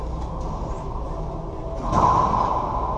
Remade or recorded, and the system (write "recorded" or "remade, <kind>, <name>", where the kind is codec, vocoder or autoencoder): recorded